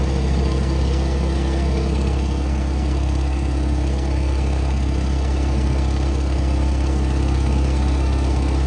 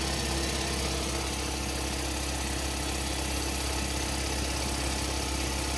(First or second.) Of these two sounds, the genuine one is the second